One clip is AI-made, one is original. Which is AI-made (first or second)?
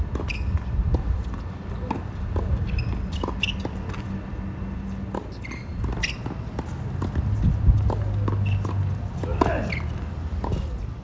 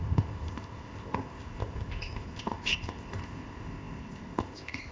second